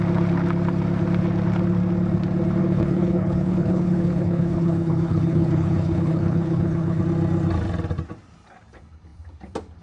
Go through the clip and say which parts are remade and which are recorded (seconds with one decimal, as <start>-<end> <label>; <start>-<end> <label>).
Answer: 0.0-2.6 recorded; 2.6-7.0 remade; 7.0-9.8 recorded